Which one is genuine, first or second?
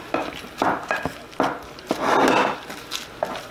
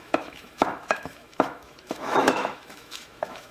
first